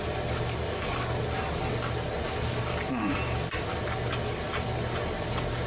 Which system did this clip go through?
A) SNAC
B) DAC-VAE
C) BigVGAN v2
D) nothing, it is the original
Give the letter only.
D